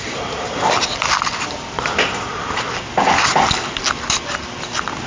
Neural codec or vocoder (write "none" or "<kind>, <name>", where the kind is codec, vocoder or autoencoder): none